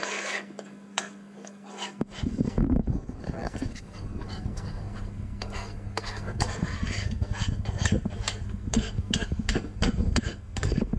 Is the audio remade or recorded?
remade